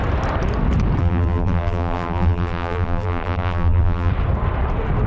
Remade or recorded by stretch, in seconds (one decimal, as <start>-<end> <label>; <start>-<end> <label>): 0.0-1.0 recorded; 1.0-4.1 remade; 4.1-5.1 recorded